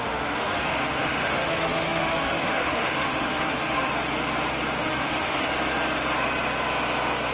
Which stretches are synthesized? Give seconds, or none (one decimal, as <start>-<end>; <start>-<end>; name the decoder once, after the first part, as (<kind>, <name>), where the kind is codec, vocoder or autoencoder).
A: 0.0-3.9 (autoencoder, DAC-VAE); 4.8-5.5